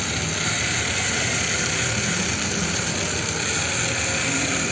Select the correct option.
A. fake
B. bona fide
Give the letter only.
B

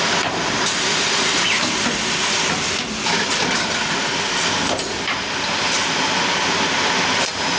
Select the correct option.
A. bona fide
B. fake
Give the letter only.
A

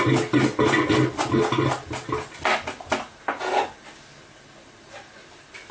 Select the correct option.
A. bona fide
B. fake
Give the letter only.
A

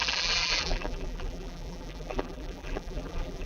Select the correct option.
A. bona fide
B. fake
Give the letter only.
B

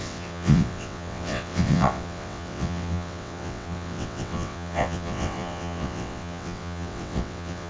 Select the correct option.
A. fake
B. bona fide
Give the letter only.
A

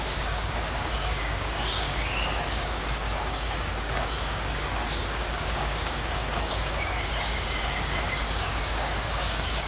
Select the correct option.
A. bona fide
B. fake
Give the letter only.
B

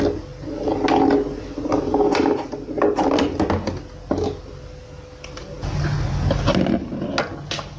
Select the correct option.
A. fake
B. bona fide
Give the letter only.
B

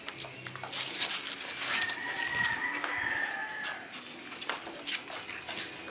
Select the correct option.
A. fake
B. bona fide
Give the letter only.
B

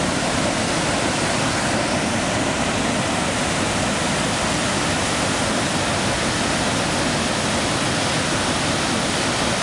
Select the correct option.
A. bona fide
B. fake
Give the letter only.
A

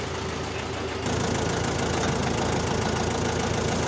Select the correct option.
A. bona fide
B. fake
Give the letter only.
A